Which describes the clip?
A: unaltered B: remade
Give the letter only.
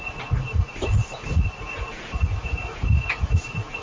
B